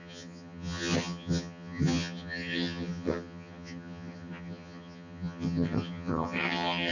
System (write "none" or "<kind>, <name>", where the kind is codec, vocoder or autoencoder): vocoder, HiFi-GAN